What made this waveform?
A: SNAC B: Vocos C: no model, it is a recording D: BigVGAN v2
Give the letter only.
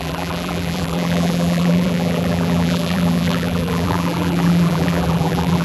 D